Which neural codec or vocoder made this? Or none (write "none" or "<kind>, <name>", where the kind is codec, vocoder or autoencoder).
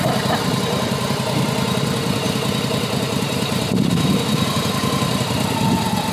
none